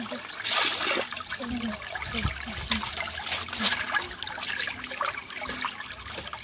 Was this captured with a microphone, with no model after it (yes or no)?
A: yes